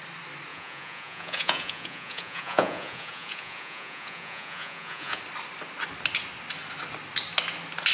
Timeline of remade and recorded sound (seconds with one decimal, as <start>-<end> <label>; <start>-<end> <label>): 0.0-0.5 recorded; 0.5-5.2 remade; 5.2-7.9 recorded